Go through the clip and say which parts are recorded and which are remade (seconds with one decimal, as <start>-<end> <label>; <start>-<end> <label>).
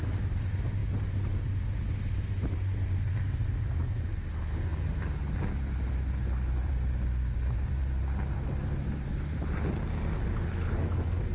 0.0-11.3 recorded